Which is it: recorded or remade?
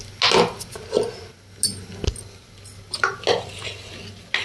recorded